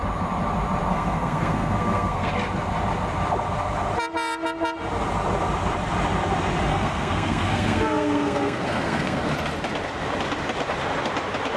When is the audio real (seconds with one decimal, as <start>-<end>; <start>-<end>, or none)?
0.0-0.9; 2.3-6.7; 9.2-11.6